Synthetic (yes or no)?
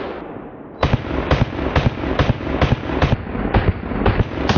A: no